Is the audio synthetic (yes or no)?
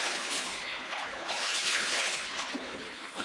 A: yes